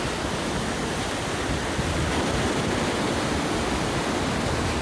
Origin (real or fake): real